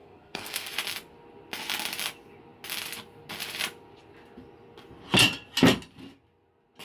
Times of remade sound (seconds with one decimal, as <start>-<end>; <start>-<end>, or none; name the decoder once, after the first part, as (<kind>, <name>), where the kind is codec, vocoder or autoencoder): 0.0-0.7 (codec, SNAC)